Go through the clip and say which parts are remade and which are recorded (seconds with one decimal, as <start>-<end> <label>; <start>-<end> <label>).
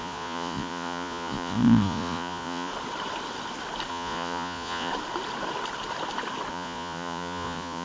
0.0-2.7 remade; 2.7-3.9 recorded; 3.9-4.9 remade; 4.9-6.5 recorded; 6.5-7.8 remade